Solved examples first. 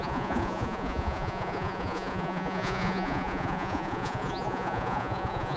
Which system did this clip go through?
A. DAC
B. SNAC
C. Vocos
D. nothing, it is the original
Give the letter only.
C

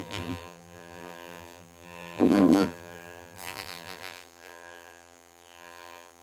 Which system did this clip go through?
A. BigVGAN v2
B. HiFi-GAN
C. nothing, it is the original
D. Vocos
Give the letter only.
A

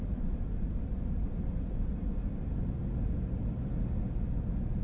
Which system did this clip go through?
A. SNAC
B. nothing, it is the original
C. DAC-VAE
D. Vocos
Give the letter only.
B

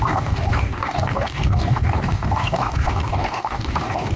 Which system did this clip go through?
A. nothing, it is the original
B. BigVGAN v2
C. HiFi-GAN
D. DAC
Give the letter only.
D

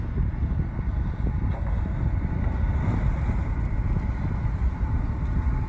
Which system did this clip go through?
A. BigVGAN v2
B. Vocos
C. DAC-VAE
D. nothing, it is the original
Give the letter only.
D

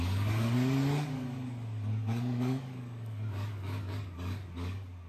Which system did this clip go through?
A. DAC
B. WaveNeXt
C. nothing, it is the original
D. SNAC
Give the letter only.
A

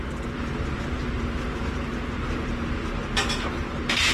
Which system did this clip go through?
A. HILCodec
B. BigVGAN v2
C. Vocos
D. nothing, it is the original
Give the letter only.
B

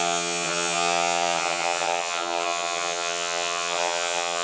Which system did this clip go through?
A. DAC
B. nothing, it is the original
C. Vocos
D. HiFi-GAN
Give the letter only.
D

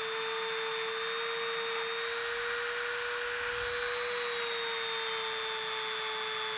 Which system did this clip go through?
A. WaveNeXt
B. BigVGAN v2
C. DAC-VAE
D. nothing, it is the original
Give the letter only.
D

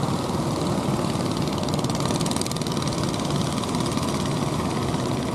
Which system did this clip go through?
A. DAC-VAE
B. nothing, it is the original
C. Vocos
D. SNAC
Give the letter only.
B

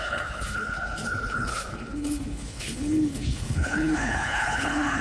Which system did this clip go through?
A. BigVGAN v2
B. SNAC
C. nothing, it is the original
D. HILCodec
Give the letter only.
D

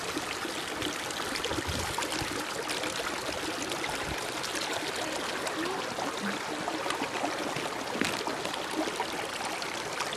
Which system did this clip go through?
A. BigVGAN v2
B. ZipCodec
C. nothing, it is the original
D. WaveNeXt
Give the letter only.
C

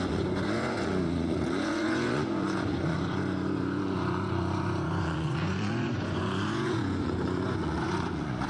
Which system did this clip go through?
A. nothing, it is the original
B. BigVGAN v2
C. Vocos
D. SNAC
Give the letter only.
C